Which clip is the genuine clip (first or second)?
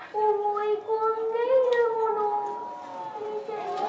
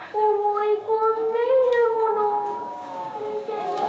first